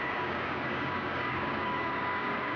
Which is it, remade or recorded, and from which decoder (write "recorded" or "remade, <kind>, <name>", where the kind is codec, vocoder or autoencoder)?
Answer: remade, codec, DAC